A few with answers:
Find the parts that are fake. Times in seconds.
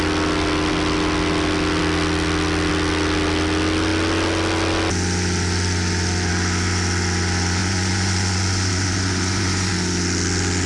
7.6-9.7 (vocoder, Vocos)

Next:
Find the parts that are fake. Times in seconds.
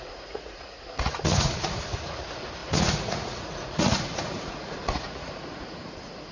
0.0-6.3 (vocoder, Vocos)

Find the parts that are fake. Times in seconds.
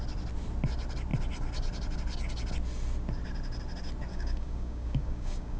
4.1-5.6 (codec, DAC)